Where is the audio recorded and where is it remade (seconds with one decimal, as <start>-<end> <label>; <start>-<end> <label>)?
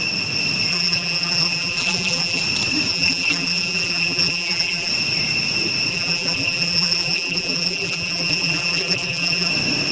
0.0-0.7 recorded; 0.7-2.4 remade; 2.4-2.9 recorded; 2.9-4.9 remade; 4.9-5.9 recorded; 5.9-9.5 remade; 9.5-9.9 recorded